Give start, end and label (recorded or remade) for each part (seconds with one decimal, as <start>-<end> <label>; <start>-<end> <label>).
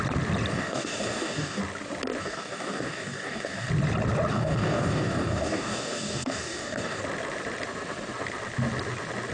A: 0.0-0.5 recorded; 0.5-1.6 remade; 1.6-2.2 recorded; 2.2-3.7 remade; 3.7-4.3 recorded; 4.3-7.0 remade; 7.0-9.3 recorded